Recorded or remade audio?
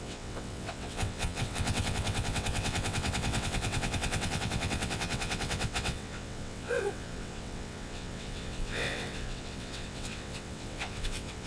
remade